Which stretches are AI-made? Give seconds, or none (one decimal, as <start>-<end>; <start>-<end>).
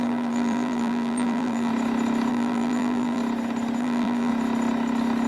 0.0-1.7; 2.3-3.2; 3.8-4.3